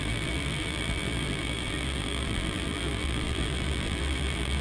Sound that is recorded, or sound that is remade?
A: remade